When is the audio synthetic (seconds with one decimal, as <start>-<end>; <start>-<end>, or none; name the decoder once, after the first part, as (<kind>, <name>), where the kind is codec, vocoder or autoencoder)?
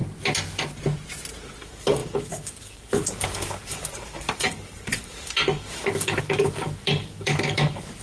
1.6-8.0 (codec, DAC)